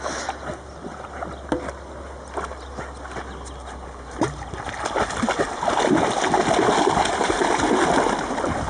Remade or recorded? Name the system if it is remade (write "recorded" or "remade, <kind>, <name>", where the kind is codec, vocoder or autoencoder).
recorded